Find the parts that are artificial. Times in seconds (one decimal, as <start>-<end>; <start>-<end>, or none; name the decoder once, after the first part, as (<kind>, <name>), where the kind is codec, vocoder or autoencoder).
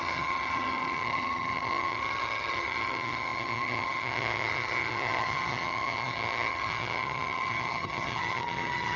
0.0-9.0 (vocoder, HiFi-GAN)